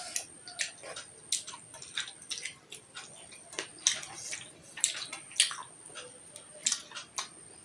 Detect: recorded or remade recorded